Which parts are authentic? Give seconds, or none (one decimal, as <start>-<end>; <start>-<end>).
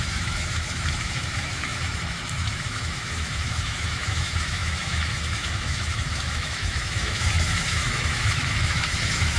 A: none